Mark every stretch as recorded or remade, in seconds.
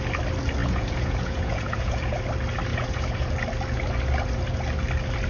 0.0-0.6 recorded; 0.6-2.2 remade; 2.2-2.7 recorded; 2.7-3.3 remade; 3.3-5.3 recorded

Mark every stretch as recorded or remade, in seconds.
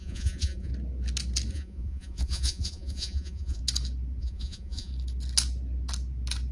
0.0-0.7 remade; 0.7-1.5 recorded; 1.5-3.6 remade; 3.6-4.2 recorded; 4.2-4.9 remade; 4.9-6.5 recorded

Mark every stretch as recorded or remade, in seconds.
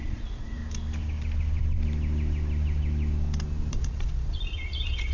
0.0-0.6 remade; 0.6-3.7 recorded; 3.7-5.1 remade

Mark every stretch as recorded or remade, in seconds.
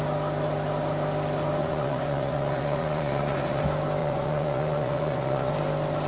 0.0-1.6 recorded; 1.6-3.6 remade; 3.6-4.0 recorded; 4.0-5.5 remade; 5.5-6.1 recorded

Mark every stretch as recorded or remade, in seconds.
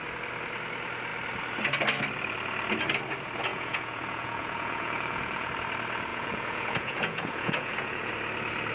0.0-3.5 recorded; 3.5-5.5 remade; 5.5-6.1 recorded; 6.1-8.1 remade; 8.1-8.7 recorded